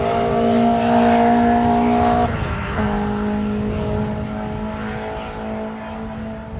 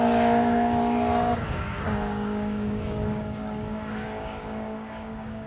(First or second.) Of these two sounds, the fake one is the second